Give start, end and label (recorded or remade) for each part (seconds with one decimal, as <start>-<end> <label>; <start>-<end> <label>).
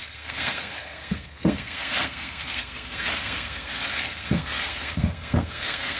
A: 0.0-6.0 remade